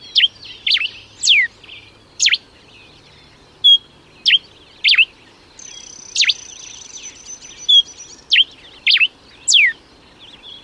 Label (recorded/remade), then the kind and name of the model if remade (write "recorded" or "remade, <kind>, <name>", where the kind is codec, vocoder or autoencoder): recorded